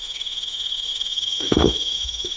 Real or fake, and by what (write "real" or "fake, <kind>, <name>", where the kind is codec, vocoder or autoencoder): fake, autoencoder, DAC-VAE